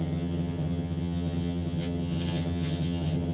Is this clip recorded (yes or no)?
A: no